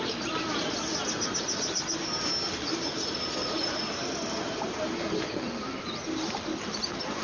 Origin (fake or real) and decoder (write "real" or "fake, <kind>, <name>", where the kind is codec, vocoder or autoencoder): real